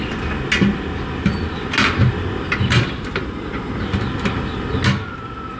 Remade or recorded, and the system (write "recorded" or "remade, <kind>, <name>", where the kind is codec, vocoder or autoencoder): recorded